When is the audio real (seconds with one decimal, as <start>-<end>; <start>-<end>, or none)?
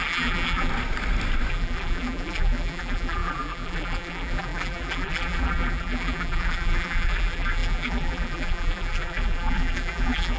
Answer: 0.7-1.5